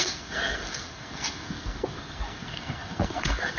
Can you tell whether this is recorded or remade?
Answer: remade